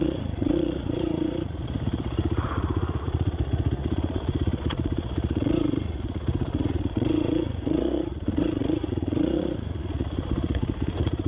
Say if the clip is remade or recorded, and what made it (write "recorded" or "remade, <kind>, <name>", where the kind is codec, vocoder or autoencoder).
remade, vocoder, Vocos